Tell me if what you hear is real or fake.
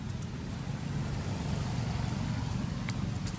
real